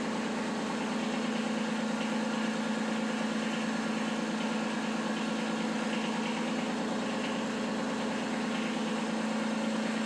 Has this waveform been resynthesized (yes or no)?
no